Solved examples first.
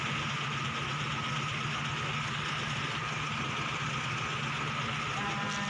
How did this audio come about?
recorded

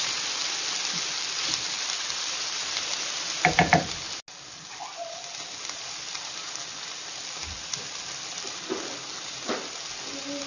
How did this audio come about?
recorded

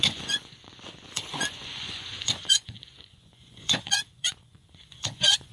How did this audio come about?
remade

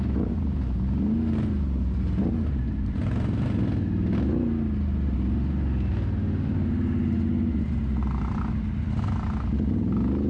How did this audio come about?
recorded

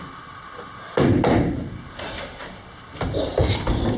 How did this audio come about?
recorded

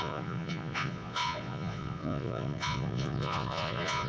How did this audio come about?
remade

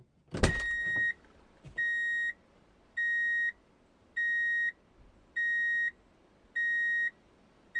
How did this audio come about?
recorded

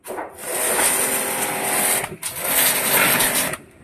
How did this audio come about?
recorded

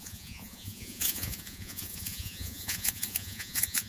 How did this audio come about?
remade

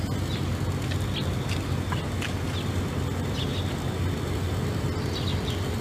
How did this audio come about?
recorded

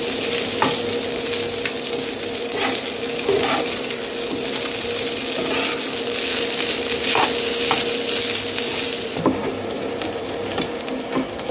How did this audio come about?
recorded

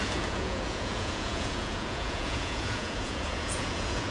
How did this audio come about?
remade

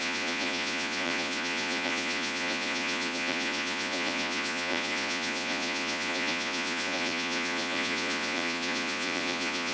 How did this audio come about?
remade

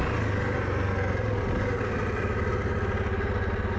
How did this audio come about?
recorded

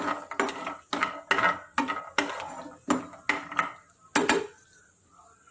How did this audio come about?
recorded